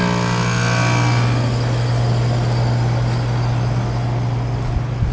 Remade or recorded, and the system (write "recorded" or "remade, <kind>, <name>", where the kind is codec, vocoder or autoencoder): recorded